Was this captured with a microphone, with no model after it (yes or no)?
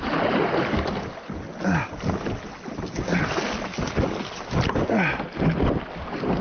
yes